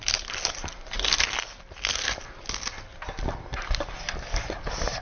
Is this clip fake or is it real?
real